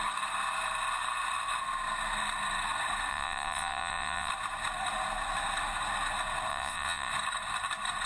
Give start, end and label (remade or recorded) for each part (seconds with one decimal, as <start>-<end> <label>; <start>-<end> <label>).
0.0-3.1 recorded; 3.1-4.3 remade; 4.3-6.5 recorded; 6.5-7.1 remade; 7.1-8.1 recorded